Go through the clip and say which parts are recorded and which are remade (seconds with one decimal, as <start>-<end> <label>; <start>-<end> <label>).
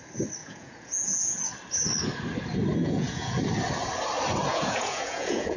0.0-0.4 recorded; 0.4-1.4 remade; 1.4-2.8 recorded; 2.8-3.4 remade; 3.4-4.5 recorded; 4.5-5.6 remade